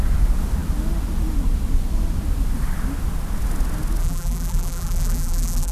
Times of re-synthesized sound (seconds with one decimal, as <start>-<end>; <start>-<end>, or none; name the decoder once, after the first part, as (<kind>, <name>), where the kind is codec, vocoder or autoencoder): 4.0-5.7 (vocoder, BigVGAN v2)